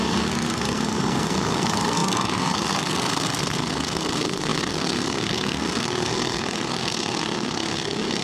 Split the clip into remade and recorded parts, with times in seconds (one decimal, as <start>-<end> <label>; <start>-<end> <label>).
0.0-8.2 remade